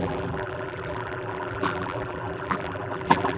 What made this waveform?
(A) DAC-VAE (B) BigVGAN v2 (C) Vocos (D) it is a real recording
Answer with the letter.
B